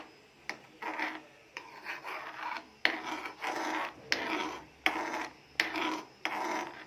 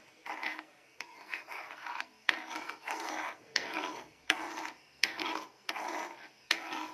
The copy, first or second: second